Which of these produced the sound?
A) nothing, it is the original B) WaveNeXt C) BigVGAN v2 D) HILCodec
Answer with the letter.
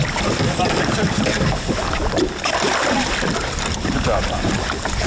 C